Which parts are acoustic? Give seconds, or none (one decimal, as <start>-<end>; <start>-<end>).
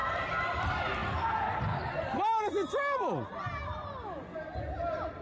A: 0.0-5.2